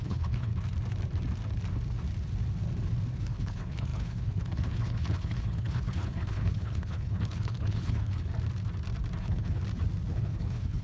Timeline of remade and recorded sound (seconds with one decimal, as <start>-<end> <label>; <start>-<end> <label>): 0.0-0.5 remade; 0.5-3.2 recorded; 3.2-8.3 remade; 8.3-9.2 recorded; 9.2-9.6 remade; 9.6-10.1 recorded; 10.1-10.8 remade